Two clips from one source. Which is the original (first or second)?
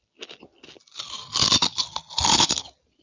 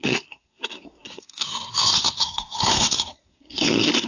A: first